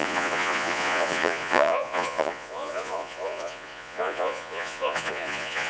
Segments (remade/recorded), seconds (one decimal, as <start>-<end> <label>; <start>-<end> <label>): 0.0-5.7 remade